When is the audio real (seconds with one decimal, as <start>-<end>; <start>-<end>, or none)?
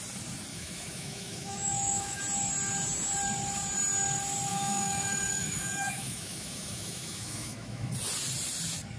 0.0-0.5; 2.2-4.5; 7.9-9.0